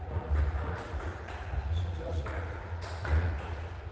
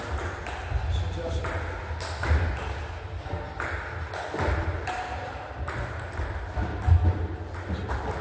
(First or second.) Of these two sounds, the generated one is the first